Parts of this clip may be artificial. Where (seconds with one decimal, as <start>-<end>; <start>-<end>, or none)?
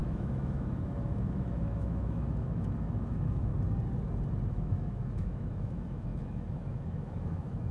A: 0.0-3.5; 4.5-7.7